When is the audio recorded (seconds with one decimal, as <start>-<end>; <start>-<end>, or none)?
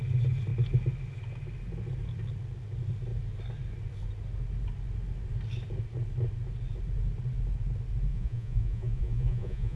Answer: 0.0-8.1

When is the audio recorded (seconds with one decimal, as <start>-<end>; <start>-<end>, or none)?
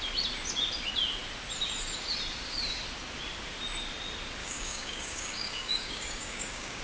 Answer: 0.0-4.4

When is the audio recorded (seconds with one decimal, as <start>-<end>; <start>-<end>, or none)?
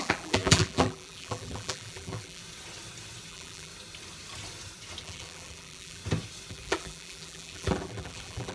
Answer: 2.4-3.3; 3.7-5.0; 6.0-6.5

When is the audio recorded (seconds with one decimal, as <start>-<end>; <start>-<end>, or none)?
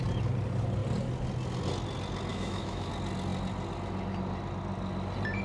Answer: 0.0-2.3; 2.9-5.4